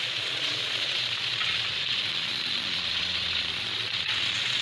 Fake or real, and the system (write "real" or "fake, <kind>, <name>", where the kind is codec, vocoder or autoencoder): fake, vocoder, Vocos